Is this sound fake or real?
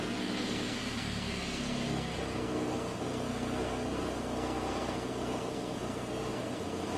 fake